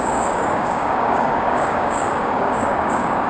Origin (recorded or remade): remade